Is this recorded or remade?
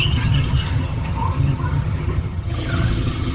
remade